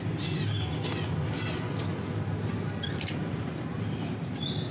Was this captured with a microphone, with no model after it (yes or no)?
yes